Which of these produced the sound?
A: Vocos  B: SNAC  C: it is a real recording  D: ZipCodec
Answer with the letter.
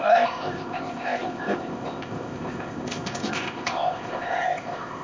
D